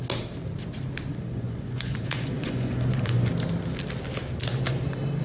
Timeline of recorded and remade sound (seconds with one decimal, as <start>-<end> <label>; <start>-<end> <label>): 0.0-1.1 recorded; 1.1-3.3 remade; 3.3-5.2 recorded